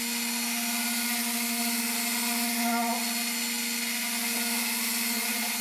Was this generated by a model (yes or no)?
no